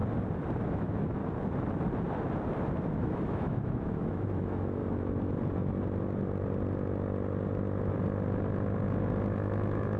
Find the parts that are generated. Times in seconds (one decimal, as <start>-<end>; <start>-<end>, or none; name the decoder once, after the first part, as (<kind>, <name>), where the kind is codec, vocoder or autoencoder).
0.7-1.2 (autoencoder, DAC-VAE); 3.0-4.8; 9.3-10.0